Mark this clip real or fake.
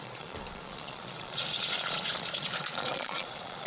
fake